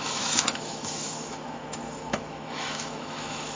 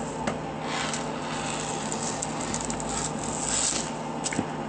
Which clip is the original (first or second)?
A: second